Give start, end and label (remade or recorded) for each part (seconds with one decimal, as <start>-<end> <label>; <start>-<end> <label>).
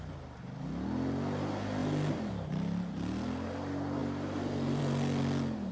0.0-5.7 recorded